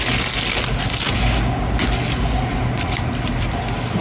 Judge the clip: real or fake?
real